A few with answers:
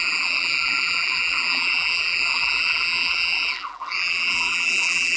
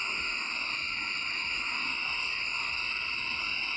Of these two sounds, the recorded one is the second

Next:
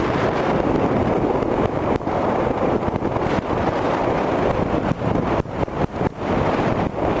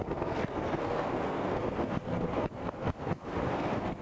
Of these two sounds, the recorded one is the first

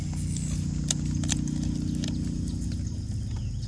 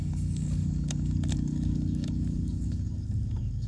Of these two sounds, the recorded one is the first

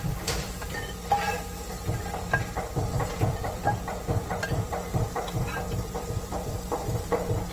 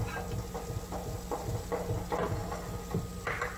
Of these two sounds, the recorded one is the second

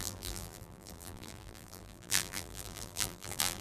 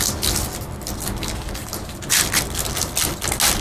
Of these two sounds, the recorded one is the second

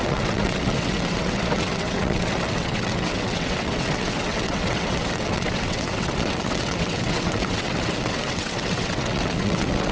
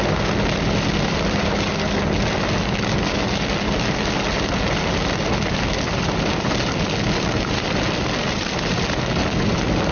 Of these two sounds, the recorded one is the second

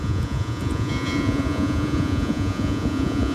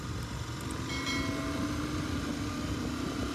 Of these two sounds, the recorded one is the second